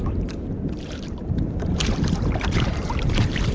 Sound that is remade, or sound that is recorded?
remade